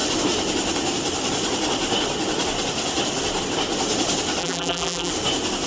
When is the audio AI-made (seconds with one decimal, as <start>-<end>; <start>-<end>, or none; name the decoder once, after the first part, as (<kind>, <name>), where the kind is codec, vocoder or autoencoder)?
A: 4.4-5.1 (vocoder, BigVGAN v2)